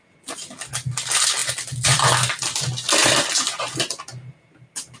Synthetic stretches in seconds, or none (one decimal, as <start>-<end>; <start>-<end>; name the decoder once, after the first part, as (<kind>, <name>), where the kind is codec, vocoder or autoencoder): none